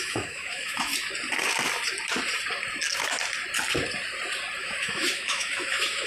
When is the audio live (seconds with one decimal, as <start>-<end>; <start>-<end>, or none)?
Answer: 0.9-4.6